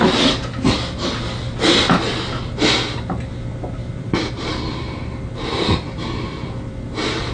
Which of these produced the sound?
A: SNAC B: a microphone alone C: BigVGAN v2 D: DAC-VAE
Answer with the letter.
B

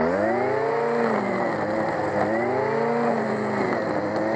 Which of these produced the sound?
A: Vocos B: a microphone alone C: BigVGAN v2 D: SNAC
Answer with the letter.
B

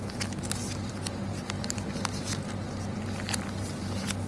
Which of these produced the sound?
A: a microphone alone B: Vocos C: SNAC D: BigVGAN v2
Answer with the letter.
A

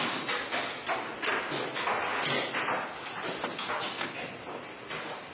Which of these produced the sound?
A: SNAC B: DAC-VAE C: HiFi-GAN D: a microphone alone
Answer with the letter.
D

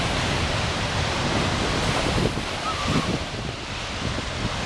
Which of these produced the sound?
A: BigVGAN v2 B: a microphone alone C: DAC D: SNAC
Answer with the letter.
A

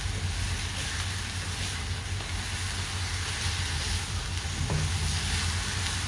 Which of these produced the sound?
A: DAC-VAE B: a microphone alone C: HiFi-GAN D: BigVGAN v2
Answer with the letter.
B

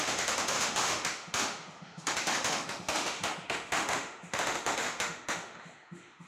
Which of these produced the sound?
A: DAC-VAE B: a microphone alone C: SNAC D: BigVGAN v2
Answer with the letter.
A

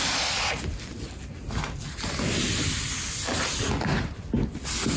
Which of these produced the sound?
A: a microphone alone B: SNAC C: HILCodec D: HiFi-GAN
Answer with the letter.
A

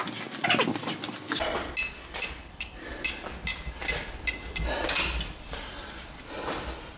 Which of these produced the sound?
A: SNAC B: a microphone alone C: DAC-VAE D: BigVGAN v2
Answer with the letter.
B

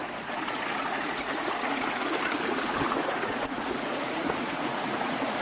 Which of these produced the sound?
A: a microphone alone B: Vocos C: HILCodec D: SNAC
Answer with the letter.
B